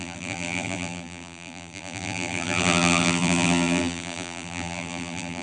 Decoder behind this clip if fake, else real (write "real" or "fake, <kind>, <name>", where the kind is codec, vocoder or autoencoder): fake, vocoder, BigVGAN v2